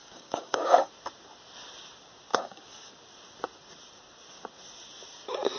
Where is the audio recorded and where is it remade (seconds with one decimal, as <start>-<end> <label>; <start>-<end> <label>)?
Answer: 0.0-0.9 remade; 0.9-2.3 recorded; 2.3-2.9 remade; 2.9-5.6 recorded